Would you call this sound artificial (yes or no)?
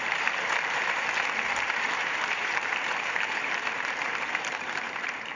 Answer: yes